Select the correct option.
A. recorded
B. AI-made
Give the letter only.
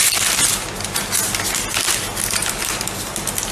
A